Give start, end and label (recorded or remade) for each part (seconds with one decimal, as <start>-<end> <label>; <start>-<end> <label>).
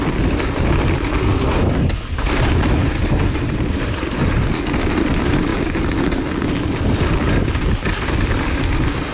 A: 0.0-2.8 recorded; 2.8-4.1 remade; 4.1-9.1 recorded